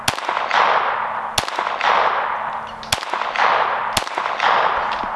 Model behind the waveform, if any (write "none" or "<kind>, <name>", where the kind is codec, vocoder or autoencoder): none